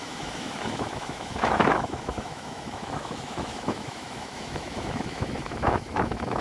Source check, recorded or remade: remade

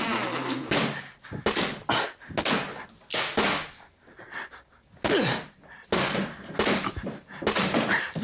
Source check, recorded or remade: recorded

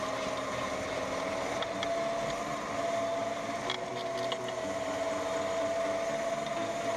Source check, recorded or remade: recorded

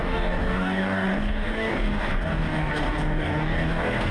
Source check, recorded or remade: remade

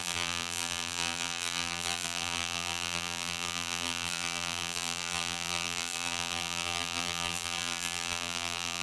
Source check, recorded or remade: remade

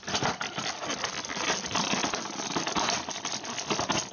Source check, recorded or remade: recorded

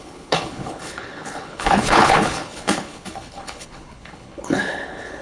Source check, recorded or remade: remade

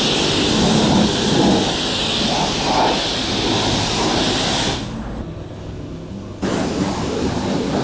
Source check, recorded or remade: recorded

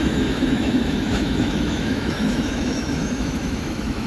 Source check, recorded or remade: remade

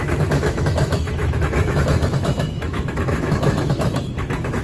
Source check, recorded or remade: remade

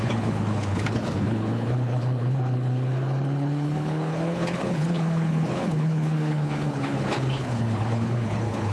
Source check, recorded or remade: remade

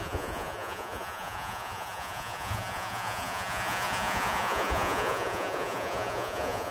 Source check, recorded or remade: remade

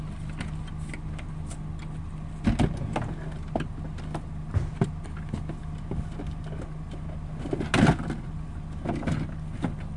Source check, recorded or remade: recorded